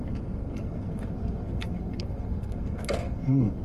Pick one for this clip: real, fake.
fake